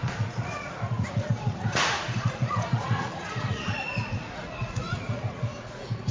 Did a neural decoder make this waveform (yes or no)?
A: yes